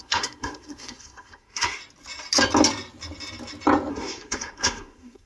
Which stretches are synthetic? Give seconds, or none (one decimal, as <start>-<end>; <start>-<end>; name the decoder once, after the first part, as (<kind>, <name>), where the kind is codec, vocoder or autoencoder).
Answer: 0.0-1.8 (codec, SNAC); 3.9-5.3